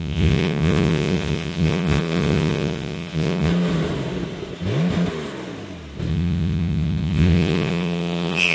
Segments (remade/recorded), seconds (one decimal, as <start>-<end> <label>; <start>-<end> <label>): 0.0-3.5 remade; 3.5-6.1 recorded; 6.1-8.5 remade